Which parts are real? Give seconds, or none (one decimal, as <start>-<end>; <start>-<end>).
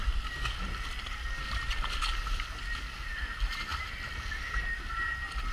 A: 0.0-5.5